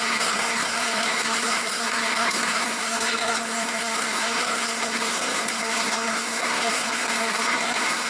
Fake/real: fake